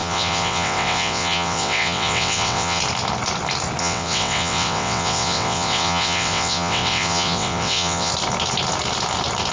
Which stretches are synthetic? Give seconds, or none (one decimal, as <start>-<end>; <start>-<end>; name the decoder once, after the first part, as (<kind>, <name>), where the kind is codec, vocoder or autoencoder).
0.0-2.8 (vocoder, WaveNeXt); 3.8-8.1